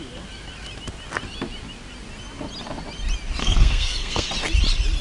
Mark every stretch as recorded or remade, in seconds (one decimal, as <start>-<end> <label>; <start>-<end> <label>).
0.0-3.4 recorded; 3.4-4.3 remade; 4.3-5.0 recorded